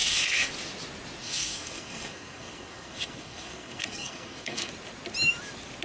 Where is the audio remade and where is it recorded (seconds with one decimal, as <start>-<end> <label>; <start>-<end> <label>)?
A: 0.0-0.5 remade; 0.5-1.2 recorded; 1.2-4.7 remade; 4.7-5.8 recorded

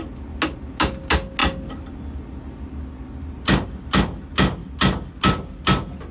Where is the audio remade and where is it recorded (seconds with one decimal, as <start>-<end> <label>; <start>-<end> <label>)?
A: 0.0-6.1 recorded

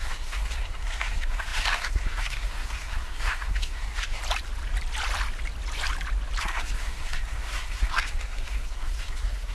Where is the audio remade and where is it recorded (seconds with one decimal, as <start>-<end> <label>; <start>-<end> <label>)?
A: 0.0-4.2 remade; 4.2-6.4 recorded; 6.4-9.5 remade

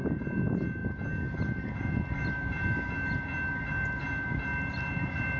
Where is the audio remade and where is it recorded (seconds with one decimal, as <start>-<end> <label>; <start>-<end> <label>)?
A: 0.0-5.4 recorded

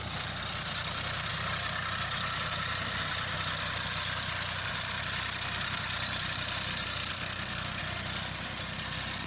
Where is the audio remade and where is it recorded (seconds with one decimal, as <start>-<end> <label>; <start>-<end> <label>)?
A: 0.0-7.1 recorded; 7.1-7.8 remade; 7.8-9.3 recorded

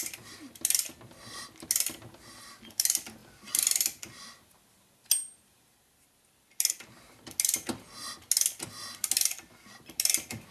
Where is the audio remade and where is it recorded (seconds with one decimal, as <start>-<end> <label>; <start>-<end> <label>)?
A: 0.0-10.5 recorded

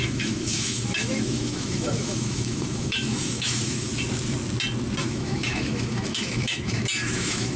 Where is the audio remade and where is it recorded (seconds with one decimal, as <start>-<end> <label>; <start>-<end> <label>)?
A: 0.0-3.9 remade; 3.9-5.0 recorded; 5.0-7.6 remade

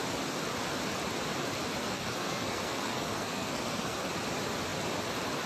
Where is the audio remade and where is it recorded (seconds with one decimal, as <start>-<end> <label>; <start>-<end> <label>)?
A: 0.0-1.8 recorded; 1.8-4.1 remade; 4.1-5.5 recorded